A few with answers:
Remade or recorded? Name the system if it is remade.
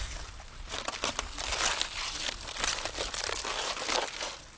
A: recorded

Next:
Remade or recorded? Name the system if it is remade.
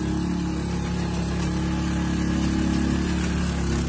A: recorded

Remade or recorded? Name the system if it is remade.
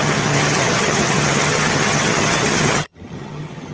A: remade, vocoder, HiFi-GAN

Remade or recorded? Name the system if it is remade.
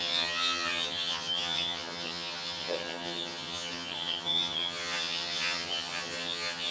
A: remade, vocoder, HiFi-GAN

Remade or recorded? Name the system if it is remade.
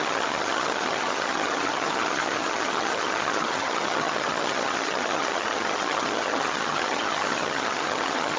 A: remade, vocoder, HiFi-GAN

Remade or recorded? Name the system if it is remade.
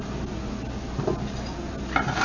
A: recorded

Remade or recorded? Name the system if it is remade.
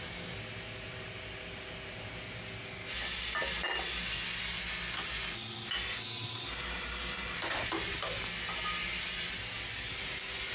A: recorded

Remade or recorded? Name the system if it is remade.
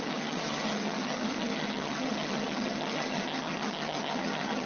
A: remade, vocoder, HiFi-GAN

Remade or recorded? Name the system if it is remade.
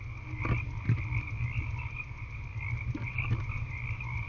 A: recorded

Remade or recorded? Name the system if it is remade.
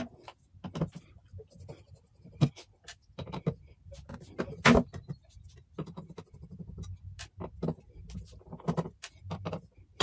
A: recorded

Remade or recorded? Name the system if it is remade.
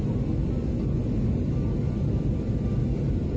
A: recorded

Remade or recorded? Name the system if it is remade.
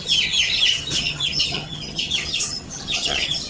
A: remade, vocoder, HiFi-GAN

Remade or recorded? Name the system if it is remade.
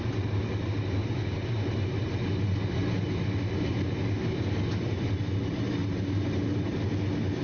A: recorded